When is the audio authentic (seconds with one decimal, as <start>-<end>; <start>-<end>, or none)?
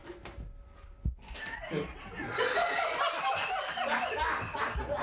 0.0-5.0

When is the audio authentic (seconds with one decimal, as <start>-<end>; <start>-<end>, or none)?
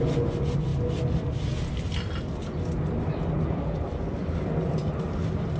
0.0-4.2; 4.8-5.6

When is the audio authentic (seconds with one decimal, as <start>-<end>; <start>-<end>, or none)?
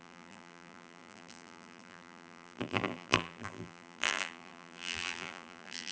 none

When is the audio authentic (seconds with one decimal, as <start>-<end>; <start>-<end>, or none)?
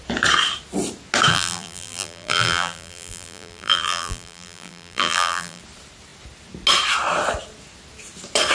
0.0-1.3; 5.6-8.5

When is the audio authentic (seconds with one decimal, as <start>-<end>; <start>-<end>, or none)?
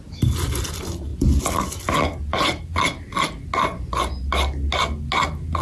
0.0-1.1; 1.8-5.6